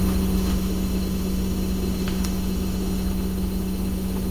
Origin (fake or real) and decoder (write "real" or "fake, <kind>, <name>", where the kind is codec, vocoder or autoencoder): fake, autoencoder, DAC-VAE